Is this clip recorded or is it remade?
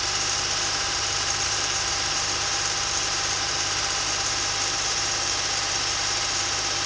remade